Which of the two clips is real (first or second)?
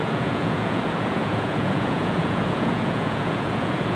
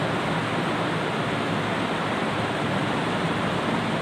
second